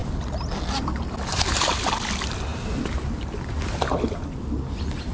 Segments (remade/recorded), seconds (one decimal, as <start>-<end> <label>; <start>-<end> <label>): 0.0-5.1 recorded